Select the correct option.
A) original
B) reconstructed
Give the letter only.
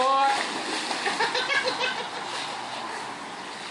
A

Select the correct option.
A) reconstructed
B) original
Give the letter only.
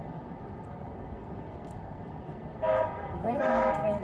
A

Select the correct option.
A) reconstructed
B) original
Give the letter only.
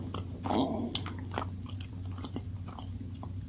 B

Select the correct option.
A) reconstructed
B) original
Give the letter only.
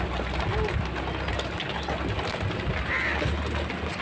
B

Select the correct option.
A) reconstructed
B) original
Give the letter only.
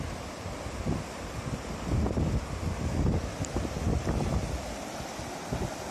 B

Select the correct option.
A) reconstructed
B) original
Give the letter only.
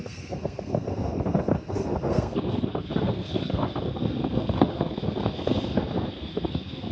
A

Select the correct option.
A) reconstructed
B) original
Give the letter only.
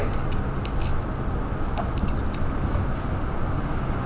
B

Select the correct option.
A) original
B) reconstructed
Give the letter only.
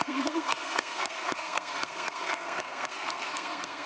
B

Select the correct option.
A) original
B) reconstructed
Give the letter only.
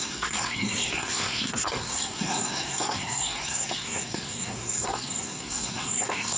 B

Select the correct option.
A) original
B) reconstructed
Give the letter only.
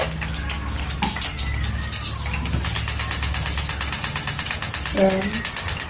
A